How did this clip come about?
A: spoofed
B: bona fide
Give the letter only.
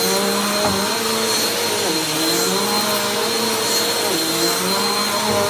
B